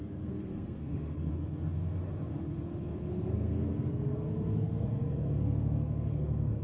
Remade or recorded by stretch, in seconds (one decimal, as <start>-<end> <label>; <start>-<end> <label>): 0.0-1.3 remade; 1.3-3.1 recorded; 3.1-6.6 remade